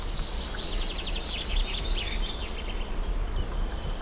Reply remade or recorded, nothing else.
recorded